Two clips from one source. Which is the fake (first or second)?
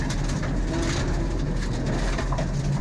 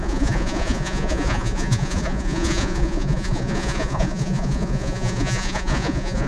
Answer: second